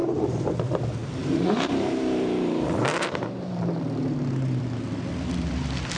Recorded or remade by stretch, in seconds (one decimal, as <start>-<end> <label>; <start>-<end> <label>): 0.0-0.6 remade; 0.6-1.0 recorded; 1.0-4.6 remade; 4.6-6.0 recorded

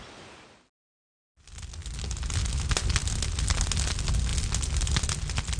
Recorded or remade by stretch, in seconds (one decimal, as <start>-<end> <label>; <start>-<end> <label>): 0.0-5.6 recorded

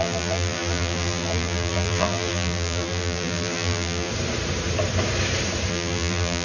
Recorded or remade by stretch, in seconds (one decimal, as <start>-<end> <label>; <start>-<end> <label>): 0.0-4.1 remade; 4.1-5.7 recorded; 5.7-6.4 remade